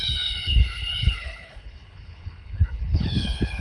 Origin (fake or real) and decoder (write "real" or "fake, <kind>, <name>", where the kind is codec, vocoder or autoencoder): fake, codec, HILCodec